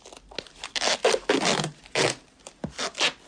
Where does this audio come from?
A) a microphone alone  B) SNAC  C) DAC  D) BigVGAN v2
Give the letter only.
A